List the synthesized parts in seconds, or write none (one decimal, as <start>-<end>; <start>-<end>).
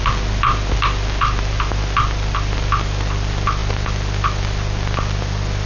none